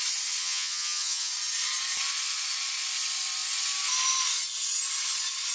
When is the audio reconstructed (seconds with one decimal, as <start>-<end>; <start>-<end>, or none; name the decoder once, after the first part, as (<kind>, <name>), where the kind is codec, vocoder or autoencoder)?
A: 0.4-1.3 (vocoder, HiFi-GAN)